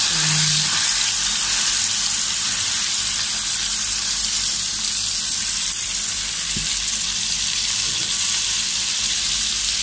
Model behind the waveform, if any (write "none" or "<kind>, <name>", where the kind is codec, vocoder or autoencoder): vocoder, BigVGAN v2